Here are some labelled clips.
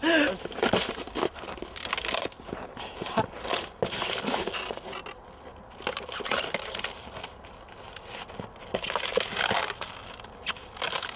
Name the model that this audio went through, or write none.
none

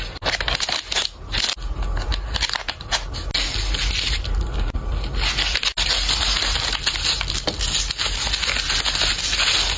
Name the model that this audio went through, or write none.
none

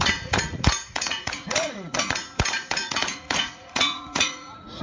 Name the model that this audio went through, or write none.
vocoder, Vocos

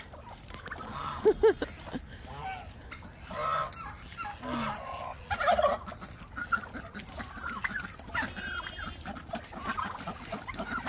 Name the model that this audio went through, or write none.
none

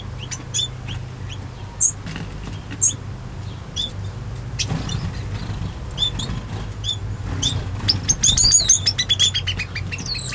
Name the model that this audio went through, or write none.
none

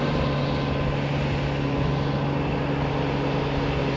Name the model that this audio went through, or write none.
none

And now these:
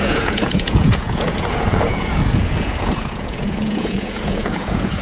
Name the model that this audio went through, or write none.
vocoder, Vocos